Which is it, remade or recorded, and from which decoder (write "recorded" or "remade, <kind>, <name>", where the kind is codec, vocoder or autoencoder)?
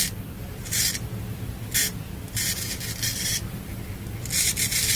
recorded